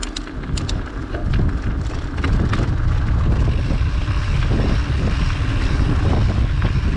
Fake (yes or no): no